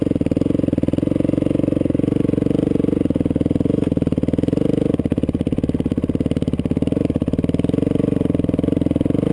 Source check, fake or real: real